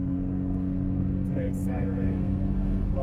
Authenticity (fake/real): fake